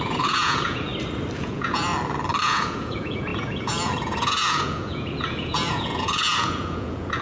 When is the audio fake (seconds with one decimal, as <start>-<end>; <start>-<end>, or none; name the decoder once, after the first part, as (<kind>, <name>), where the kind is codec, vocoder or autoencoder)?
0.0-0.9 (vocoder, Vocos); 1.4-1.9; 2.4-7.2